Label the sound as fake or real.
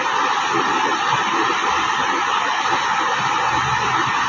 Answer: real